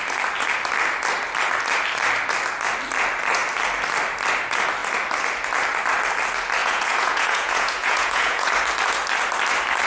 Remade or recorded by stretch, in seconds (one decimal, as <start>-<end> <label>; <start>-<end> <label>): 0.0-6.6 recorded; 6.6-8.5 remade; 8.5-9.9 recorded